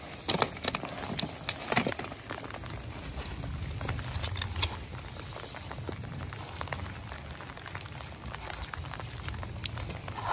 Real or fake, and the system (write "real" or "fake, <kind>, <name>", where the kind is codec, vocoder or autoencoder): real